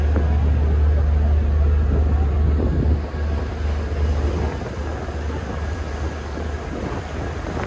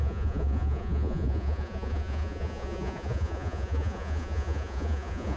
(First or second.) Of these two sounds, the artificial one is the second